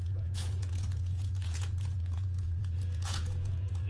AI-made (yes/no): yes